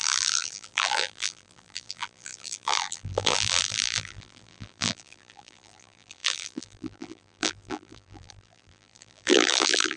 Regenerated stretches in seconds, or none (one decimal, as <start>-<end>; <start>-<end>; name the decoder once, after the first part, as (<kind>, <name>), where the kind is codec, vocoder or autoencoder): 0.0-10.0 (vocoder, BigVGAN v2)